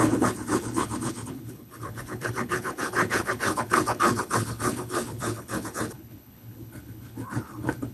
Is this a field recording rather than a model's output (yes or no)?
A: no